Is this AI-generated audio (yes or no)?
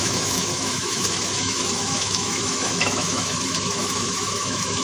yes